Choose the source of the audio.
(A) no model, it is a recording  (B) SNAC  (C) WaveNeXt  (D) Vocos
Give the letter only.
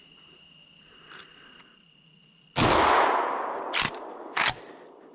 A